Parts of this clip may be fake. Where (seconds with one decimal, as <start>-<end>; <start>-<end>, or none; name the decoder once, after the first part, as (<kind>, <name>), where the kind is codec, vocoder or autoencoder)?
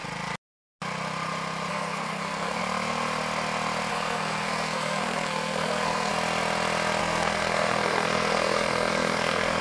1.7-2.6 (codec, SNAC); 3.9-6.1; 7.0-9.6